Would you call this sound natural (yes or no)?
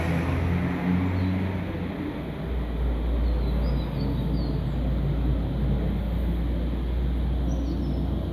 yes